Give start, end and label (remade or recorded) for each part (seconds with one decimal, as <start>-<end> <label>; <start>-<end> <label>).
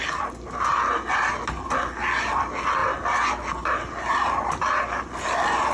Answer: 0.0-5.7 recorded